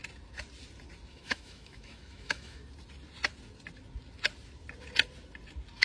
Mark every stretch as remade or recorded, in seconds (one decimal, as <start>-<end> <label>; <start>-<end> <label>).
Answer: 0.0-1.1 recorded; 1.1-2.6 remade; 2.6-5.8 recorded